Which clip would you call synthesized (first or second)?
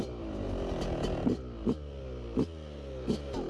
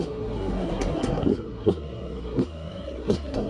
second